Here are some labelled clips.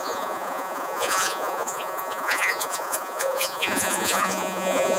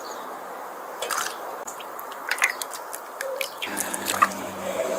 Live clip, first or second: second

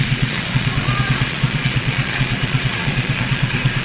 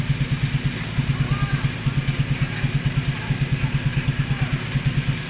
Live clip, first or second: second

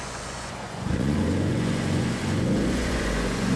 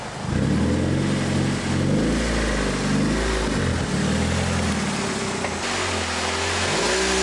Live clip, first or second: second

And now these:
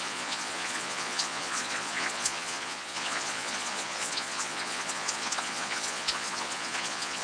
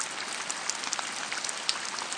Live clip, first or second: second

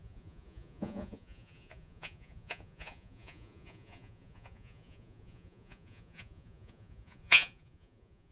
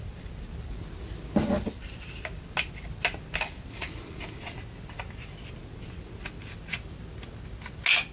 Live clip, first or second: second